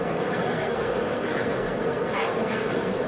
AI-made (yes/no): yes